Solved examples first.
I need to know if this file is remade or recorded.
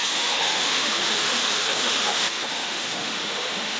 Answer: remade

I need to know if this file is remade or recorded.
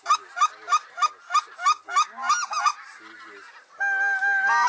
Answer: recorded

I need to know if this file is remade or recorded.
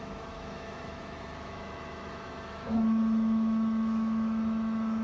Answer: remade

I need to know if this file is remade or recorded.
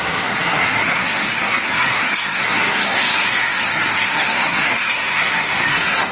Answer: remade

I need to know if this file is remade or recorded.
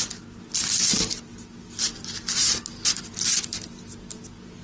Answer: recorded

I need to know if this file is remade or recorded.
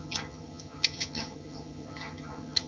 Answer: remade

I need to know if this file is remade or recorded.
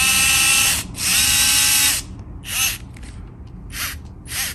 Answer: recorded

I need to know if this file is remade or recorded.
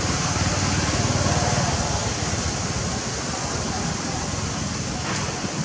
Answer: recorded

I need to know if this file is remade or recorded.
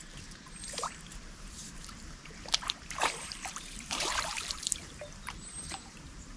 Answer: remade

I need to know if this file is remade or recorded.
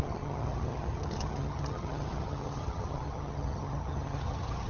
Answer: remade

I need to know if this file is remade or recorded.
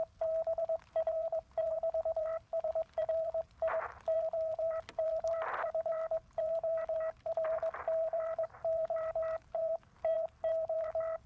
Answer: remade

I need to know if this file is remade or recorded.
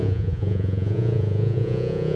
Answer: remade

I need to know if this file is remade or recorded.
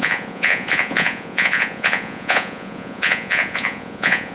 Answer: remade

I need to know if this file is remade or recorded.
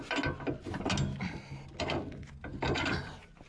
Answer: recorded